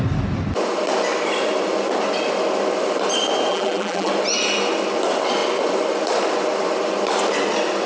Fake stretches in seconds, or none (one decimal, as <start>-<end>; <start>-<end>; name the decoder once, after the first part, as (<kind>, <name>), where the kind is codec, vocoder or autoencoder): 3.5-4.1 (vocoder, BigVGAN v2)